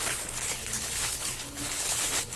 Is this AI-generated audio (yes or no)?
yes